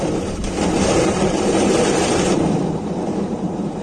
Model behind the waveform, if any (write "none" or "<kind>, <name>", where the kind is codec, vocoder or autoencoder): vocoder, BigVGAN v2